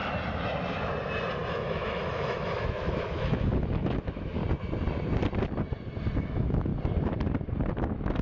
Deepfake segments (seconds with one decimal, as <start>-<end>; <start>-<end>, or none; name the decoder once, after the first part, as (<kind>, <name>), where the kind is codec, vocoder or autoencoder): 1.5-4.4 (autoencoder, DAC-VAE); 6.2-6.7; 7.7-8.2